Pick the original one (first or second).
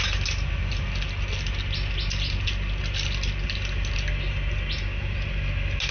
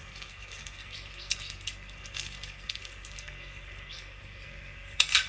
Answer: first